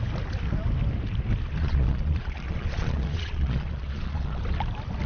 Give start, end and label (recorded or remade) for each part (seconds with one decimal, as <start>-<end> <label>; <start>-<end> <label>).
0.0-1.6 recorded; 1.6-4.4 remade; 4.4-5.1 recorded